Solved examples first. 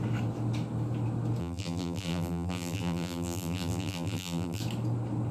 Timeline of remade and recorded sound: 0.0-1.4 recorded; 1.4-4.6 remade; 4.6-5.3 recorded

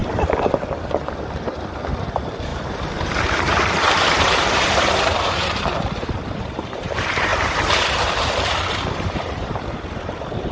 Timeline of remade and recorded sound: 0.0-2.0 recorded; 2.0-2.5 remade; 2.5-3.2 recorded; 3.2-7.3 remade; 7.3-7.9 recorded; 7.9-10.5 remade

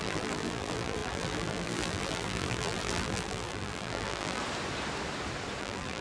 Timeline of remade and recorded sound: 0.0-4.4 remade; 4.4-5.6 recorded; 5.6-6.0 remade

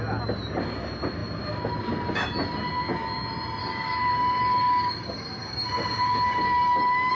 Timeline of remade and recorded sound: 0.0-3.6 recorded; 3.6-7.1 remade

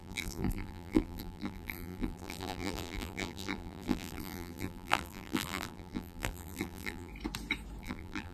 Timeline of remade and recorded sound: 0.0-7.1 remade; 7.1-7.8 recorded; 7.8-8.3 remade

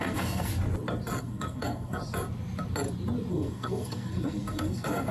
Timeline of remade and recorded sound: 0.0-0.5 remade; 0.5-1.2 recorded; 1.2-2.0 remade; 2.0-3.3 recorded; 3.3-5.1 remade

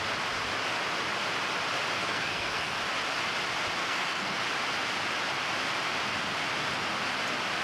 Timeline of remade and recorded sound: 0.0-2.0 recorded; 2.0-2.8 remade; 2.8-3.8 recorded; 3.8-4.4 remade; 4.4-7.6 recorded

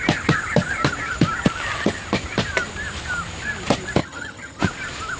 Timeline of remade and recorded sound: 0.0-4.0 recorded; 4.0-4.6 remade; 4.6-5.2 recorded